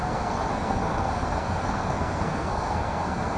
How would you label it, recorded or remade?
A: remade